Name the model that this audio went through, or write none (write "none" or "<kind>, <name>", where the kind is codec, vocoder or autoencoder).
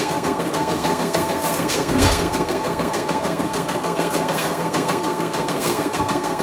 codec, SNAC